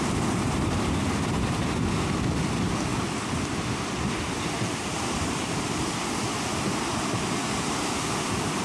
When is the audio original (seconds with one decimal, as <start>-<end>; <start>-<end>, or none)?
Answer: 0.0-8.6